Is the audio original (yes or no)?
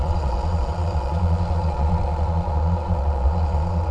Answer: no